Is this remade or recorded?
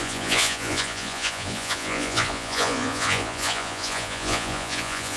remade